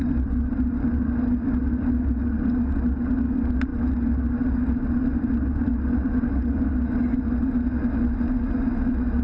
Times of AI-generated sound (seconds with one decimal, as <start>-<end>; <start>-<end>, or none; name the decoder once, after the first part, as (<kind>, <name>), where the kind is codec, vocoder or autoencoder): none